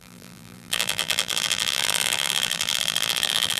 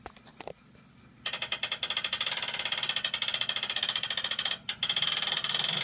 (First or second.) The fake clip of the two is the first